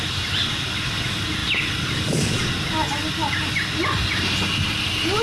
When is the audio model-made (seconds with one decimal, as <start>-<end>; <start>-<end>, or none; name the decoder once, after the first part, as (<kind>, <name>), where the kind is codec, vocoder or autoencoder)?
none